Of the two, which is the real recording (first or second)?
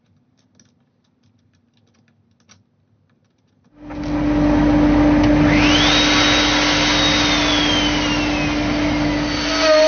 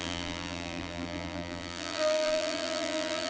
first